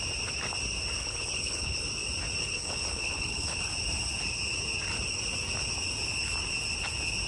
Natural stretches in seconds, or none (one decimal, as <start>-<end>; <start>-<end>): 0.0-1.0; 1.8-2.4; 3.6-7.3